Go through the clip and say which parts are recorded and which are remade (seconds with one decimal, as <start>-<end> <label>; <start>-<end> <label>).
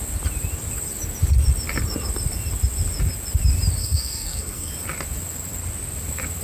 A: 0.0-3.8 recorded; 3.8-4.7 remade; 4.7-6.4 recorded